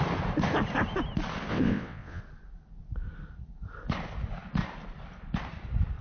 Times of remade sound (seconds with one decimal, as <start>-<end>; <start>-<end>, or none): 1.5-2.2